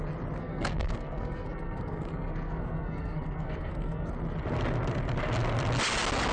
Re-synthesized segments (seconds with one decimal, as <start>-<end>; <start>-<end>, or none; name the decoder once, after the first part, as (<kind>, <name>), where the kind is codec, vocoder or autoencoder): 0.4-4.1 (codec, SNAC)